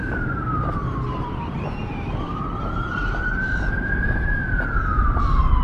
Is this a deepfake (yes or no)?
yes